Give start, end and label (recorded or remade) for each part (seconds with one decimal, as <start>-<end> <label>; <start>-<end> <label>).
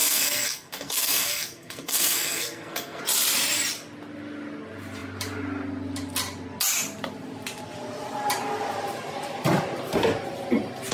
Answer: 0.0-3.0 remade; 3.0-10.9 recorded